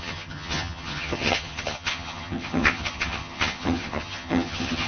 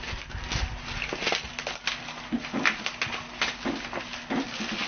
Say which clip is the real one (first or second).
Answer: second